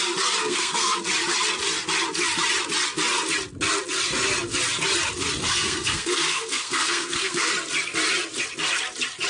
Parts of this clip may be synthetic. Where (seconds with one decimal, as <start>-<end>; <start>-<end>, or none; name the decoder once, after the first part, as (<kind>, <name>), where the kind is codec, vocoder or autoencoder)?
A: 0.4-1.0 (codec, SNAC); 5.4-7.5